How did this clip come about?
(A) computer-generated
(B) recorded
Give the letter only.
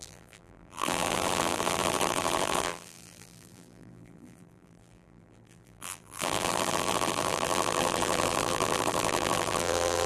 A